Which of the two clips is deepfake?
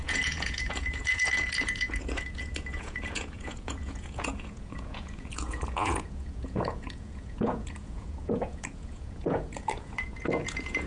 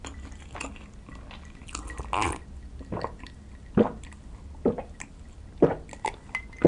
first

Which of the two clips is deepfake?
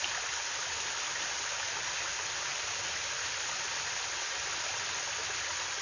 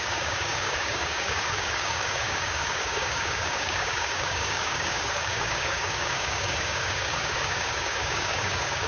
second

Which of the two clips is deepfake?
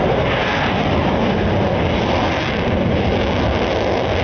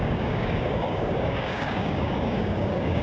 second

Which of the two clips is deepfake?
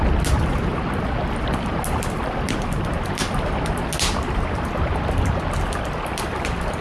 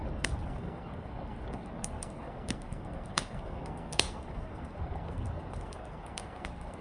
second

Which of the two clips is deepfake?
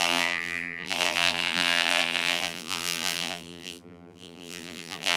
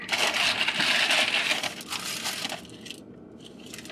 first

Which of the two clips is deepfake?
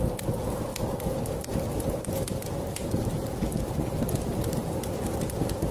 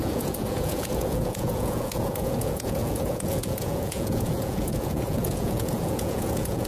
second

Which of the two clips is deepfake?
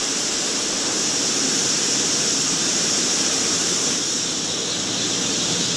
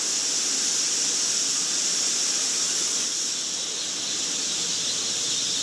first